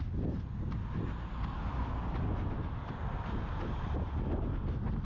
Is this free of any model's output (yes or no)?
yes